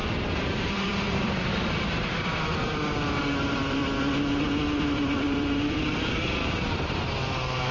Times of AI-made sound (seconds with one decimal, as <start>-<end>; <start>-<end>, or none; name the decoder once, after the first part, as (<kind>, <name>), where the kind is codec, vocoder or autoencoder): 0.0-3.8 (vocoder, BigVGAN v2); 4.8-7.7

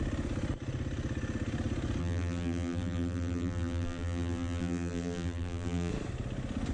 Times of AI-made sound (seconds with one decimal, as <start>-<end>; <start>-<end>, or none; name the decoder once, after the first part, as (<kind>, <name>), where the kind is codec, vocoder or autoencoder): 2.0-5.9 (vocoder, BigVGAN v2)

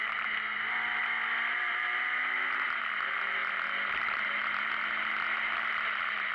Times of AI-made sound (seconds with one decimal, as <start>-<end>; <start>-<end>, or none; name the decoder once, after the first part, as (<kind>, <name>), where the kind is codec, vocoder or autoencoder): none

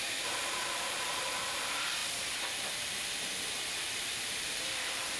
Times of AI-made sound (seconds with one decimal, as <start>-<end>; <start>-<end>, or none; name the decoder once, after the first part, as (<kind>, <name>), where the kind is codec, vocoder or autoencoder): 0.0-5.2 (vocoder, BigVGAN v2)

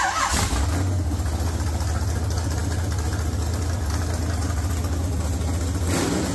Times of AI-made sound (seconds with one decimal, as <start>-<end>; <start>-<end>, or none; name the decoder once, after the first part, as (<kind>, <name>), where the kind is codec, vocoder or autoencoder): none